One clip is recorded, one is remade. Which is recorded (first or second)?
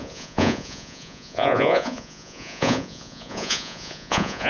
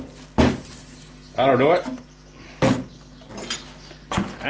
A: second